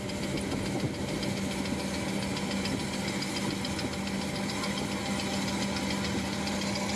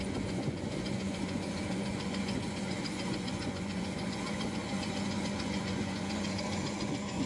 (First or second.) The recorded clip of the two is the first